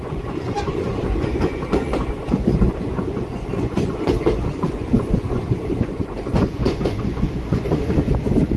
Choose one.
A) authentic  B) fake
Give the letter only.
B